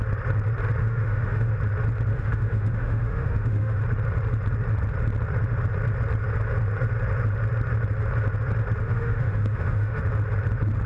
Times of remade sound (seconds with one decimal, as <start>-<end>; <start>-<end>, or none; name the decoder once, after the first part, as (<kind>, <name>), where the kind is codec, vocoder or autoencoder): 0.8-1.5 (autoencoder, DAC-VAE); 2.1-3.8; 8.8-10.0